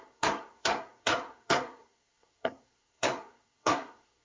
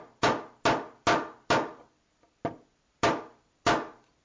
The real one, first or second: second